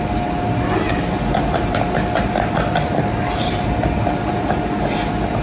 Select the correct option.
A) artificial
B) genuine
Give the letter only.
B